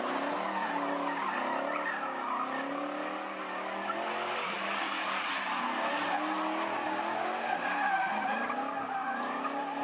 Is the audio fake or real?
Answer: real